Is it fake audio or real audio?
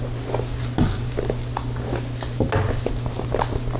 real